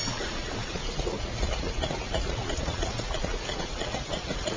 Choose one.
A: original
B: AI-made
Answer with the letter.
B